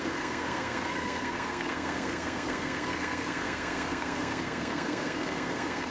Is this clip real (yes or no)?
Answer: no